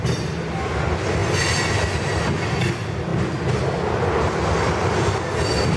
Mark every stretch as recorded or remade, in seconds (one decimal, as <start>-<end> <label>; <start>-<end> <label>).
0.0-5.8 recorded